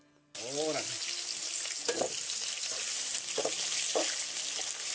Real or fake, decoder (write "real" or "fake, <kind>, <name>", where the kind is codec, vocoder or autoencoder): real